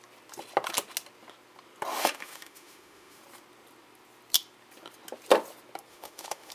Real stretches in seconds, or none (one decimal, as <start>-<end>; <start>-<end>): 0.0-1.9; 3.2-5.9